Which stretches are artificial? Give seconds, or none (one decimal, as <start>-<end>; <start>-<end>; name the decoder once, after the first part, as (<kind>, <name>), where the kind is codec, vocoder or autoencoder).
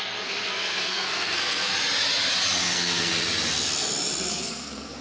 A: 0.0-1.7 (codec, SNAC); 2.6-3.1; 4.3-5.0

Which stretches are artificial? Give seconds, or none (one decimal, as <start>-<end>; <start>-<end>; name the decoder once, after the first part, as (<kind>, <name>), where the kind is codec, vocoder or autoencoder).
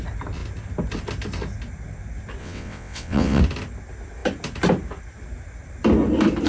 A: 2.4-3.4 (vocoder, WaveNeXt)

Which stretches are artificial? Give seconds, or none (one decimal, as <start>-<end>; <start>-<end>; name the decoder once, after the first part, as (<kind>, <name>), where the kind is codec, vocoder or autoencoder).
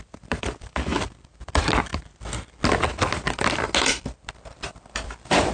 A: 0.0-0.9 (vocoder, BigVGAN v2); 3.9-5.5